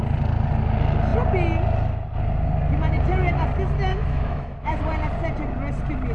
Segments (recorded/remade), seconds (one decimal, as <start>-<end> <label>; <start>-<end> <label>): 0.0-3.9 recorded; 3.9-4.8 remade; 4.8-6.1 recorded